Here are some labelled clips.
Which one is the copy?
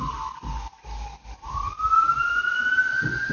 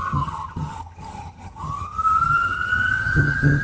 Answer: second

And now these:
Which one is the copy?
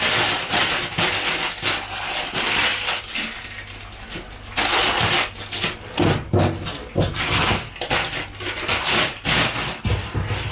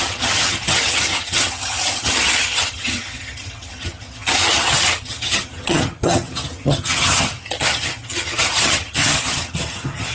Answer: second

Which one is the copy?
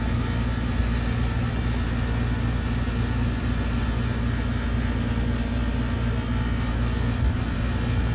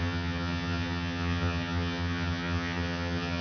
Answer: second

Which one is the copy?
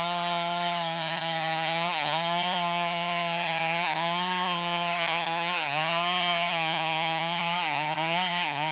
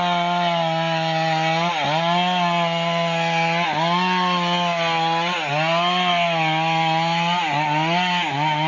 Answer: first